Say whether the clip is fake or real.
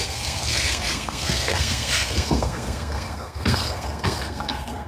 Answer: fake